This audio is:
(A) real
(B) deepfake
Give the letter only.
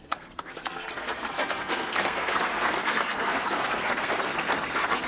B